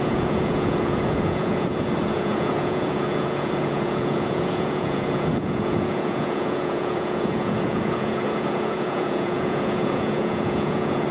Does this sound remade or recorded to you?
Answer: remade